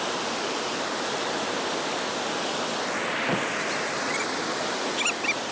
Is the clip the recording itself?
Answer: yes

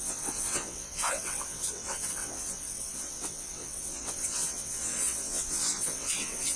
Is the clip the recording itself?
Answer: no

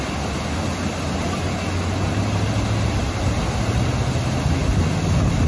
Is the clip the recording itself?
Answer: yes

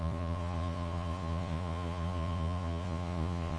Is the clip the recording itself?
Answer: no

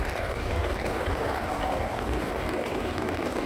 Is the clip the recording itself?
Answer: no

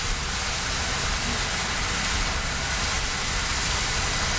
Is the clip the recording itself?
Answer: yes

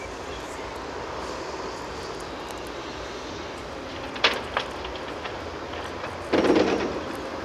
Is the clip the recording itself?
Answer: yes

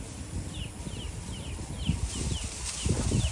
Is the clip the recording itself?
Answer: yes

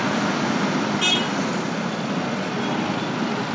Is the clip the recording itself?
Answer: yes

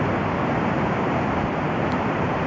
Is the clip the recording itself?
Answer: yes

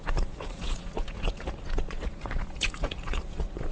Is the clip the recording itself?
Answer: no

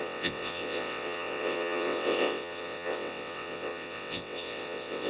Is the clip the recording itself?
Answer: no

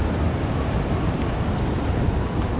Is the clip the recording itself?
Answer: yes